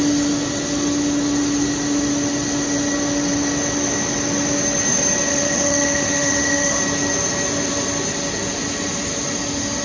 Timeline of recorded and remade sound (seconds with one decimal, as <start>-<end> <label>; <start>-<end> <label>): 0.0-5.3 recorded; 5.3-6.8 remade; 6.8-9.8 recorded